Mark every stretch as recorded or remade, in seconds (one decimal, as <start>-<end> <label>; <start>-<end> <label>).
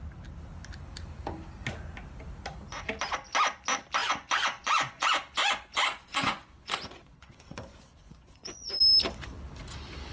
0.0-4.0 recorded; 4.0-8.7 remade; 8.7-10.1 recorded